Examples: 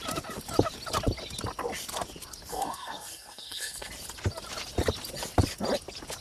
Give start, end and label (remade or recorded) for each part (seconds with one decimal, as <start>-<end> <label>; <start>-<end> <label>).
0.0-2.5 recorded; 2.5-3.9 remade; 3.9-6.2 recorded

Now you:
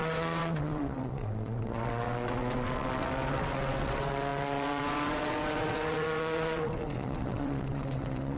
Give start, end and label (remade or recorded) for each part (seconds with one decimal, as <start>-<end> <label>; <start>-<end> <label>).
0.0-8.4 remade

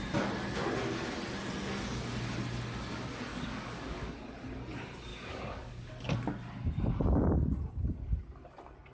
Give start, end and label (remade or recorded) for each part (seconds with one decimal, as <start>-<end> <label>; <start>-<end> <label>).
0.0-3.3 recorded; 3.3-4.2 remade; 4.2-5.1 recorded; 5.1-5.9 remade; 5.9-8.9 recorded

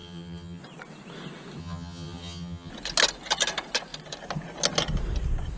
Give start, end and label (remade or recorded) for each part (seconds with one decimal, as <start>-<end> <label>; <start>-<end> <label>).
0.0-0.6 remade; 0.6-1.6 recorded; 1.6-2.7 remade; 2.7-5.6 recorded